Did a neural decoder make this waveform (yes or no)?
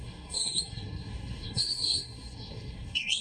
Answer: yes